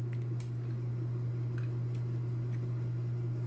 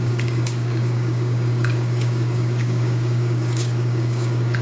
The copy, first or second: second